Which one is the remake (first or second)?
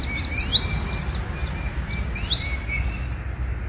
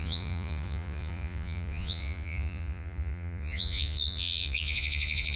second